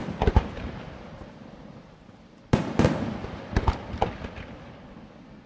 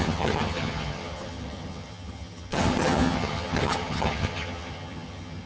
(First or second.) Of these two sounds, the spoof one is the second